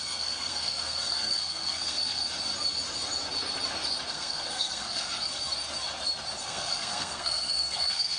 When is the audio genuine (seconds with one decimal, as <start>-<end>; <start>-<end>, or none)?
2.2-4.1; 5.3-6.4